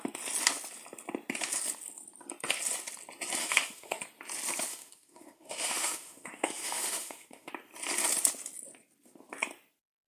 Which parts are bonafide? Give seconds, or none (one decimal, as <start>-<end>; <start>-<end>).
0.0-3.4; 4.0-4.7; 7.5-10.1